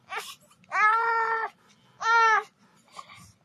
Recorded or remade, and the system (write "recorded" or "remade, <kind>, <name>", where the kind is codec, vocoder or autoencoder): recorded